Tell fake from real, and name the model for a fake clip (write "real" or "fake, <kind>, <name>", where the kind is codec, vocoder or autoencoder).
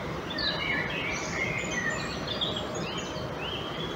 real